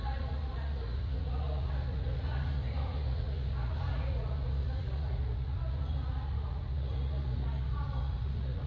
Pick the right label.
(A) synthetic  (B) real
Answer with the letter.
A